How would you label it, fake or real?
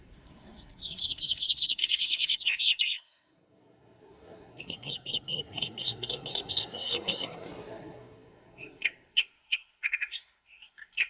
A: fake